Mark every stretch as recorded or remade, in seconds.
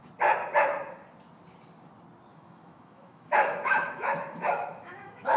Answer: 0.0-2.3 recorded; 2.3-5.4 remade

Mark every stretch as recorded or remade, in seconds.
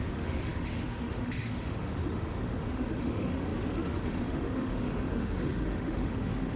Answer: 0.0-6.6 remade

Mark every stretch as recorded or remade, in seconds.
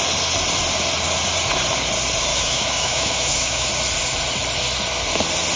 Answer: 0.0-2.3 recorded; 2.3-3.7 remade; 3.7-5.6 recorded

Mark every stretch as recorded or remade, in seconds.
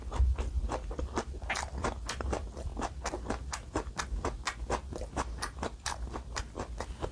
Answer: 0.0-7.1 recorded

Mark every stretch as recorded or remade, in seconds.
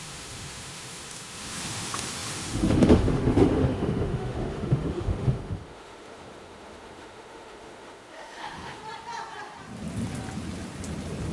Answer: 0.0-8.8 remade; 8.8-11.3 recorded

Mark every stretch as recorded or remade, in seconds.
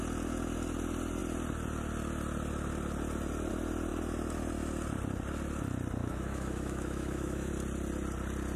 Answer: 0.0-6.0 recorded; 6.0-7.5 remade; 7.5-8.6 recorded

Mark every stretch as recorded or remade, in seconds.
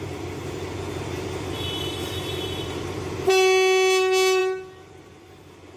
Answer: 0.0-5.8 recorded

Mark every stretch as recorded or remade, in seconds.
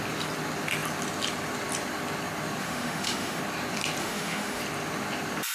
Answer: 0.0-2.6 recorded; 2.6-3.4 remade; 3.4-4.0 recorded; 4.0-4.6 remade; 4.6-5.5 recorded